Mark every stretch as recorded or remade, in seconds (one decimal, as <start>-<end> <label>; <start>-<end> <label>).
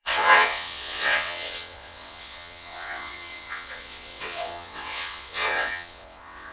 0.0-6.5 remade